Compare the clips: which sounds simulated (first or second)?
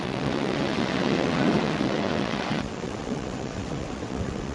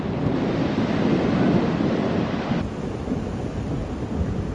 first